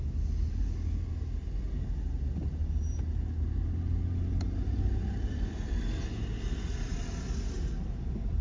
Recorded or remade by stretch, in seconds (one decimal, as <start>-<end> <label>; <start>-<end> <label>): 0.0-8.4 recorded